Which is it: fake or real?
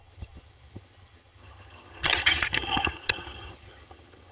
fake